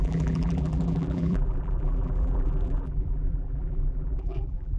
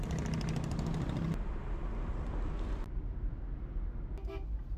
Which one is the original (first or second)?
second